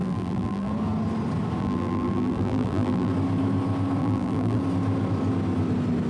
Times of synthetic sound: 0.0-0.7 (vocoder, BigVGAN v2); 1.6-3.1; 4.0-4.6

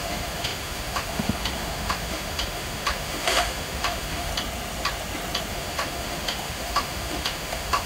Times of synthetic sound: 0.0-4.3 (autoencoder, DAC-VAE); 5.5-7.9

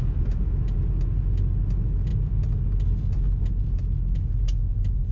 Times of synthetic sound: none

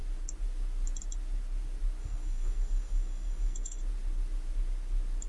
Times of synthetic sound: 2.0-3.8 (codec, SNAC)

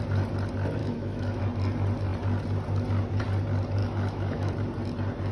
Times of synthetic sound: 0.8-1.4 (autoencoder, DAC-VAE); 3.8-4.5

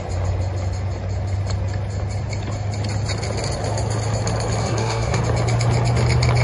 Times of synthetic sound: 4.6-5.2 (codec, SNAC)